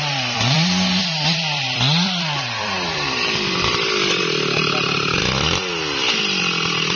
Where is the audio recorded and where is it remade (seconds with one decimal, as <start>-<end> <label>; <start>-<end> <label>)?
0.0-4.2 remade; 4.2-7.0 recorded